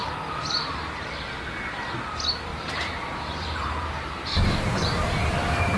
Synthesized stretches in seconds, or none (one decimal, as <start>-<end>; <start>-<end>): 2.5-4.3